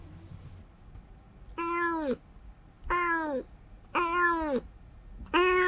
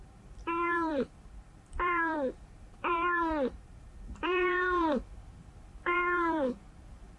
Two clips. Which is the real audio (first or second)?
first